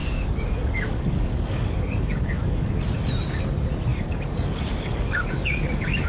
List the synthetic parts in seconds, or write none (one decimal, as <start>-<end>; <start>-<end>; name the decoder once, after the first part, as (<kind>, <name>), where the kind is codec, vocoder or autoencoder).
0.0-2.8 (codec, DAC); 3.9-6.1